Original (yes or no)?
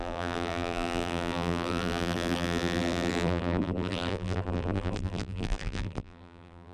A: no